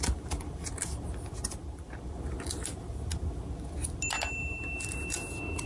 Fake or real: real